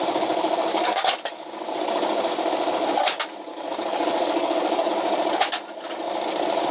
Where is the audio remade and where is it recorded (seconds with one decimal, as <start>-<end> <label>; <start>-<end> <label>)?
0.0-0.7 recorded; 0.7-1.8 remade; 1.8-3.5 recorded; 3.5-4.9 remade; 4.9-6.7 recorded

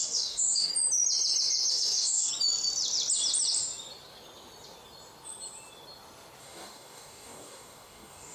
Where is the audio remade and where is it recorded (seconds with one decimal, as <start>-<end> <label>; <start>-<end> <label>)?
0.0-0.7 remade; 0.7-1.7 recorded; 1.7-2.3 remade; 2.3-6.4 recorded; 6.4-8.3 remade

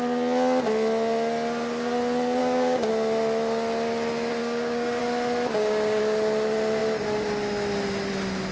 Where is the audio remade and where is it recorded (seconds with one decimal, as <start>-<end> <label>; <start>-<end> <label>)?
0.0-2.4 recorded; 2.4-2.9 remade; 2.9-4.4 recorded; 4.4-5.0 remade; 5.0-5.5 recorded; 5.5-6.0 remade; 6.0-8.5 recorded

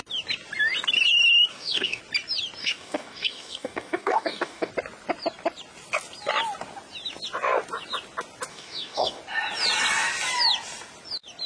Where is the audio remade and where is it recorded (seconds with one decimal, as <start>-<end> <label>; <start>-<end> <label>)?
0.0-1.5 recorded; 1.5-2.0 remade; 2.0-2.6 recorded; 2.6-4.7 remade; 4.7-8.5 recorded; 8.5-9.2 remade; 9.2-11.5 recorded